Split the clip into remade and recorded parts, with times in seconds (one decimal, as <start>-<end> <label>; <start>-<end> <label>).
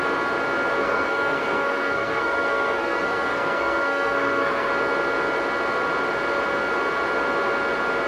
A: 0.0-0.8 recorded; 0.8-4.7 remade; 4.7-8.1 recorded